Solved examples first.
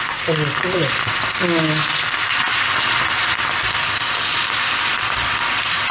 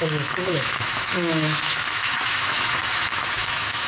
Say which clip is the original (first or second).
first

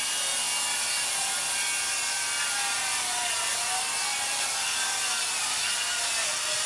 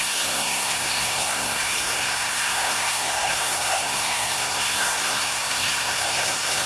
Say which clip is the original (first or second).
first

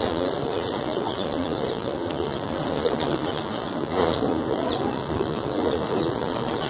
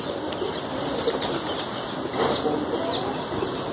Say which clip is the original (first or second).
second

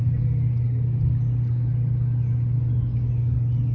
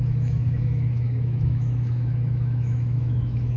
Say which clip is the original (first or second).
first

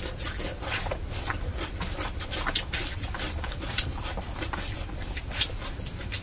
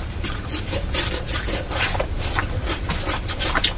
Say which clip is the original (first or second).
first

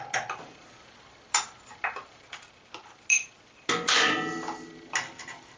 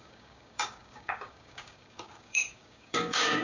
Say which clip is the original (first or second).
first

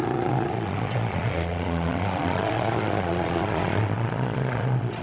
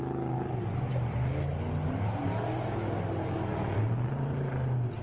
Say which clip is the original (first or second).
second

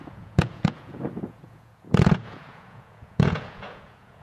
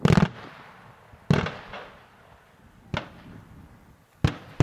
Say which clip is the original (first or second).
second